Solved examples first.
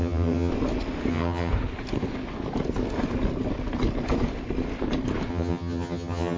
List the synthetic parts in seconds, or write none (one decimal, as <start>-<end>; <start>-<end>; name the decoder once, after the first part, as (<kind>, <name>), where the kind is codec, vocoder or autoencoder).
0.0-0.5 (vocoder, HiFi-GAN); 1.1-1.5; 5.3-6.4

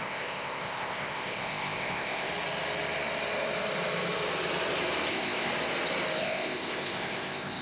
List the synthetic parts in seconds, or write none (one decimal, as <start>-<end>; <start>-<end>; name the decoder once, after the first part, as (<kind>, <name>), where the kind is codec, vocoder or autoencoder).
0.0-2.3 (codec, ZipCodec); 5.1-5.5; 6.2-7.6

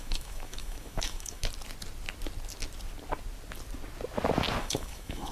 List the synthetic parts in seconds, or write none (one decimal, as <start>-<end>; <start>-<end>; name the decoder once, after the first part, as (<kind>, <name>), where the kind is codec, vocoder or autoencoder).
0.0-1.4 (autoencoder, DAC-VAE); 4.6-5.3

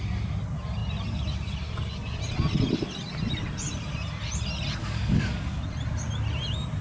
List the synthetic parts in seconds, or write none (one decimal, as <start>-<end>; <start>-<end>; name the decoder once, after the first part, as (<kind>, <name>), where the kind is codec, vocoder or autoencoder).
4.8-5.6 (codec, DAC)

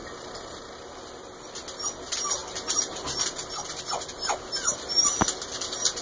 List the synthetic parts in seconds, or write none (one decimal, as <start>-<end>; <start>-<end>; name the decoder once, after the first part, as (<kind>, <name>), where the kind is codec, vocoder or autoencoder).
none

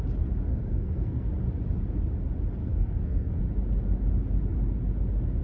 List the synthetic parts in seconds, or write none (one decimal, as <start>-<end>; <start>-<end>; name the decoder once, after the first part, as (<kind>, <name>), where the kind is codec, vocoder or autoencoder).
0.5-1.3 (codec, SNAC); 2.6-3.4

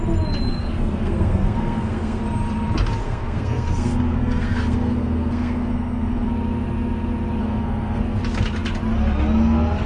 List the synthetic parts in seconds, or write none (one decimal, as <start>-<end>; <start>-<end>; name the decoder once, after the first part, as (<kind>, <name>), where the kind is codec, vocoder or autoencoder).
0.5-2.2 (codec, SNAC); 3.0-6.3; 7.4-8.2

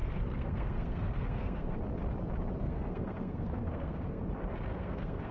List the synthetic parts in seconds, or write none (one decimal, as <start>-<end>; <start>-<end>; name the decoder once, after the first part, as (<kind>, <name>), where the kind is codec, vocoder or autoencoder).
0.0-1.8 (codec, SNAC); 2.6-4.2; 4.7-5.3